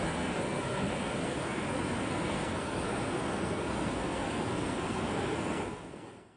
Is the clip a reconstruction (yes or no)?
yes